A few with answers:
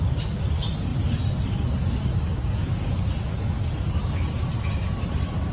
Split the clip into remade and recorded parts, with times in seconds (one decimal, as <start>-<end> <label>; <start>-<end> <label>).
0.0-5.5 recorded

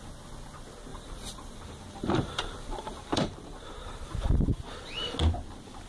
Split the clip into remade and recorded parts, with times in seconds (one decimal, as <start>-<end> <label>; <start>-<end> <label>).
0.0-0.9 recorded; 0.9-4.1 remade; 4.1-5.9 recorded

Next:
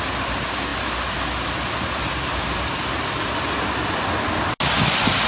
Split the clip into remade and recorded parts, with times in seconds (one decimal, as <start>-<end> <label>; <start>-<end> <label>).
0.0-5.3 recorded

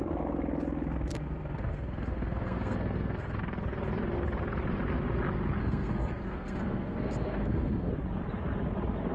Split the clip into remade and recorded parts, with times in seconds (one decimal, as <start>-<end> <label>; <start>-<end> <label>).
0.0-1.1 recorded; 1.1-3.4 remade; 3.4-5.6 recorded; 5.6-7.9 remade; 7.9-9.1 recorded